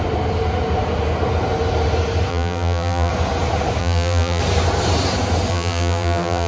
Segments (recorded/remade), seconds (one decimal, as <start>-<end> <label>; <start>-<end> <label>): 0.0-2.3 recorded; 2.3-3.1 remade; 3.1-3.8 recorded; 3.8-4.4 remade; 4.4-5.5 recorded; 5.5-6.5 remade